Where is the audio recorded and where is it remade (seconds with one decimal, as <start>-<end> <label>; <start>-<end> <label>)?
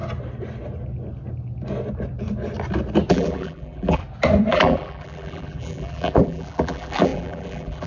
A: 0.0-3.1 recorded; 3.1-4.0 remade; 4.0-4.5 recorded; 4.5-7.9 remade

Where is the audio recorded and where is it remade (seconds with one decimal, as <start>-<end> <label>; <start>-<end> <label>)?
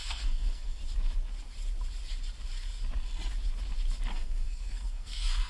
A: 0.0-0.8 remade; 0.8-4.1 recorded; 4.1-5.5 remade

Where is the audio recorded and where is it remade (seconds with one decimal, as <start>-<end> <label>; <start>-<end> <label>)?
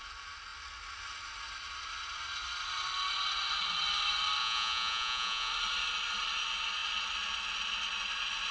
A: 0.0-4.4 recorded; 4.4-5.5 remade; 5.5-8.5 recorded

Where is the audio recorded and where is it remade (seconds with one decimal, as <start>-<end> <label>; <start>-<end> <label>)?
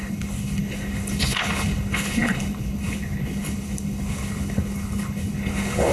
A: 0.0-5.9 remade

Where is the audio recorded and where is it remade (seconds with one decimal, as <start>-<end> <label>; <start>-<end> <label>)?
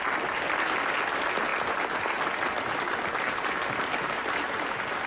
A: 0.0-5.1 recorded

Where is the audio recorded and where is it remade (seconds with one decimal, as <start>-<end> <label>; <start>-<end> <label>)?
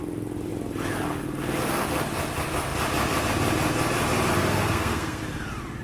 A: 0.0-4.4 recorded; 4.4-5.2 remade; 5.2-5.8 recorded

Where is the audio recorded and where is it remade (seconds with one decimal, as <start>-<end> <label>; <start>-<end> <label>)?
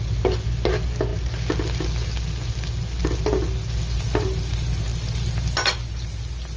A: 0.0-6.6 recorded